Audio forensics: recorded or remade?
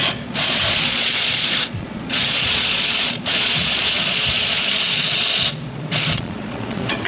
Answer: remade